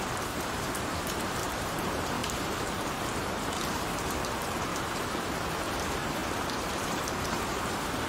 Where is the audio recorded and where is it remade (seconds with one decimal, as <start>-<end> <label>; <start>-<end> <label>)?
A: 0.0-8.1 remade